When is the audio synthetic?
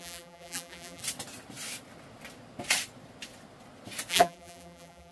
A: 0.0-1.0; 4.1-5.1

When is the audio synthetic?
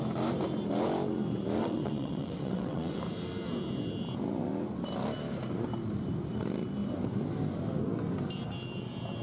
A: 1.6-3.0